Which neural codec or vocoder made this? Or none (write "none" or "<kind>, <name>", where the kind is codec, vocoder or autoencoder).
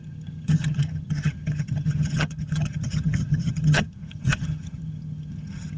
vocoder, HiFi-GAN